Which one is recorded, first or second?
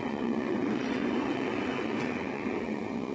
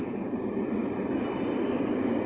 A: second